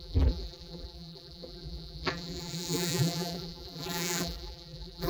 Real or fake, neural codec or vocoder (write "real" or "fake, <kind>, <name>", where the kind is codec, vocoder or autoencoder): fake, vocoder, BigVGAN v2